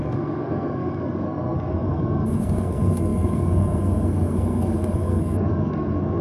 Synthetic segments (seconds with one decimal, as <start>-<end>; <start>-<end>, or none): 0.0-6.2